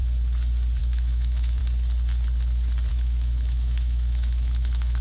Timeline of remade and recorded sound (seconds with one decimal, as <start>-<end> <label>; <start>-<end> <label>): 0.0-0.8 recorded; 0.8-1.6 remade; 1.6-2.9 recorded; 2.9-5.0 remade